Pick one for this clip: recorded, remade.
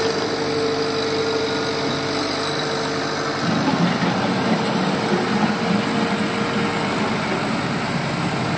recorded